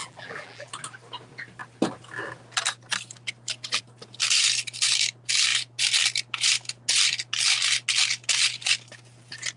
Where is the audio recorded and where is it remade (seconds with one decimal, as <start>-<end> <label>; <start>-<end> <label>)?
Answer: 0.0-0.7 remade; 0.7-9.6 recorded